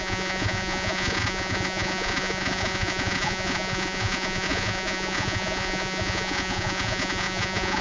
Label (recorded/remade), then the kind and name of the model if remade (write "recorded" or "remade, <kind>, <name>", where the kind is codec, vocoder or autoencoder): remade, vocoder, Vocos